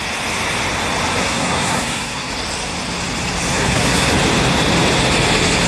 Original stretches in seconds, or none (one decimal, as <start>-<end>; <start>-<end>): 0.0-1.2; 2.3-3.5; 4.1-5.7